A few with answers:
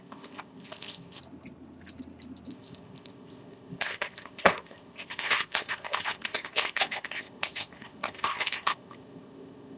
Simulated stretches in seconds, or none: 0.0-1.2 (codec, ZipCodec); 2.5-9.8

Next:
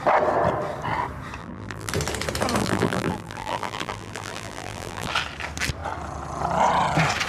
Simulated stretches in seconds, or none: 1.4-1.9 (vocoder, BigVGAN v2); 2.6-5.1

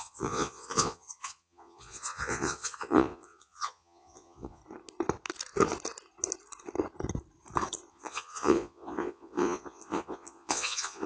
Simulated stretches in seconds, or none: 0.0-4.6 (vocoder, Vocos); 7.9-11.1

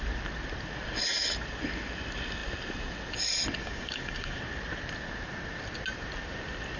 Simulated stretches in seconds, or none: 3.6-4.4 (codec, DAC)